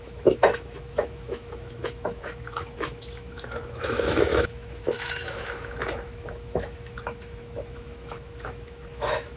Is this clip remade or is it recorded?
remade